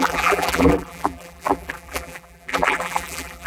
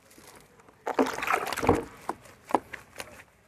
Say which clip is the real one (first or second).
second